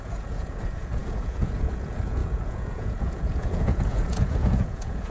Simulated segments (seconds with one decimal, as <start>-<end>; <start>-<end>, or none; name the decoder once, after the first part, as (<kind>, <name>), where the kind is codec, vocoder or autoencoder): 0.0-5.1 (vocoder, Vocos)